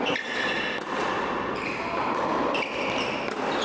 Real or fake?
real